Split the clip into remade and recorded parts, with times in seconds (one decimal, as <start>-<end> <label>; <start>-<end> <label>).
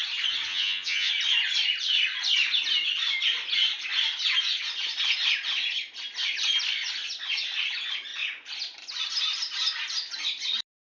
0.0-0.5 recorded; 0.5-1.1 remade; 1.1-11.0 recorded